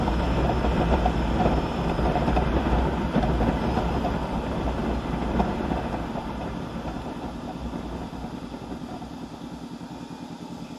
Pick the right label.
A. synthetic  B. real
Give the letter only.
B